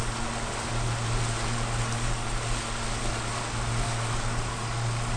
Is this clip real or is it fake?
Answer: real